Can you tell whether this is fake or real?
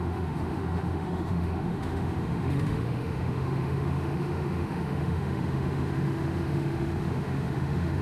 fake